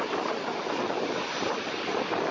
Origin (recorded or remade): recorded